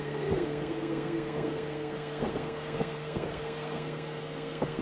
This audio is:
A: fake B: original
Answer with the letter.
A